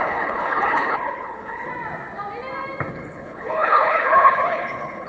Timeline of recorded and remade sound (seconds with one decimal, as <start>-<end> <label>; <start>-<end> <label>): 0.0-1.7 remade; 1.7-2.9 recorded; 2.9-5.1 remade